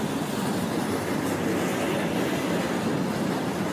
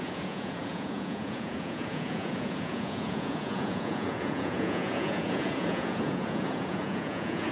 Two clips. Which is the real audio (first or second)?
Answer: first